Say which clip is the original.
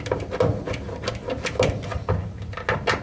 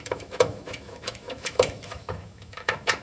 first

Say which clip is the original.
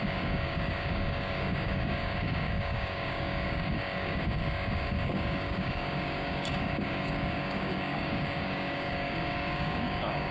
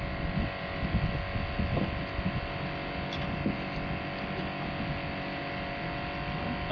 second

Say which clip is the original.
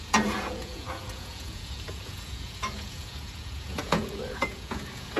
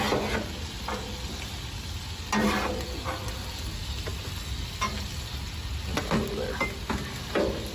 second